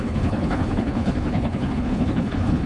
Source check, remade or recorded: remade